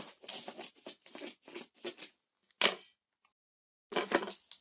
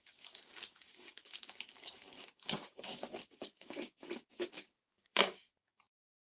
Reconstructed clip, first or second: second